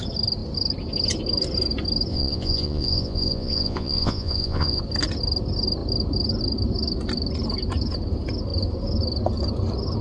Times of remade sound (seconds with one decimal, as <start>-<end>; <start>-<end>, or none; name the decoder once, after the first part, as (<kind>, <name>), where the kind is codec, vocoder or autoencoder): 2.1-4.8 (vocoder, Vocos)